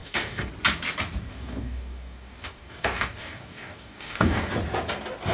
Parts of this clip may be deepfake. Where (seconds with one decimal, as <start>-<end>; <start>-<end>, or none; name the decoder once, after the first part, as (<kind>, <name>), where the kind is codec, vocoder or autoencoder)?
0.0-0.5 (codec, DAC); 1.3-4.5